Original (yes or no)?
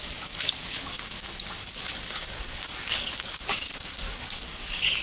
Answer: no